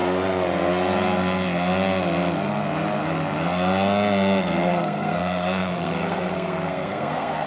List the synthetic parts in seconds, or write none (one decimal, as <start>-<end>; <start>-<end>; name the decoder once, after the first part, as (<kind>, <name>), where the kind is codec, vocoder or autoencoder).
4.4-7.5 (codec, SNAC)